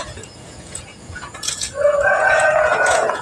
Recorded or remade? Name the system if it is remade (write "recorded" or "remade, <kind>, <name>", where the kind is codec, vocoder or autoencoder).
remade, vocoder, Vocos